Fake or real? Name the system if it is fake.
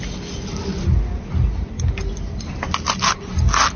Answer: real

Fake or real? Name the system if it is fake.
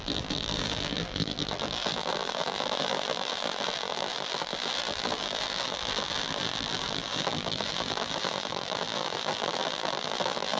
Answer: fake, vocoder, BigVGAN v2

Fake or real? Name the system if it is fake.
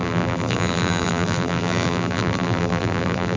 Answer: fake, vocoder, BigVGAN v2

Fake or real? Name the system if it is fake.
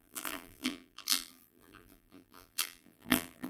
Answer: fake, vocoder, BigVGAN v2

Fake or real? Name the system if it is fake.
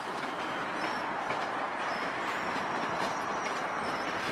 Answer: fake, vocoder, BigVGAN v2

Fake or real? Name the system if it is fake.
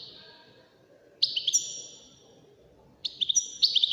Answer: real